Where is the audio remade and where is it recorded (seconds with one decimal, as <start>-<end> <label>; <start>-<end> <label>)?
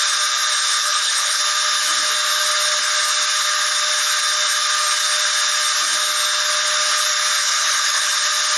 0.0-0.8 recorded; 0.8-1.4 remade; 1.4-7.4 recorded; 7.4-8.1 remade; 8.1-8.6 recorded